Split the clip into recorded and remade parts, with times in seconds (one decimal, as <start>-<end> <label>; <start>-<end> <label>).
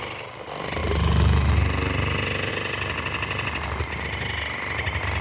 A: 0.0-5.2 recorded